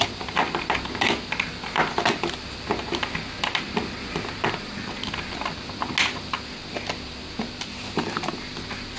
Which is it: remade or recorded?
recorded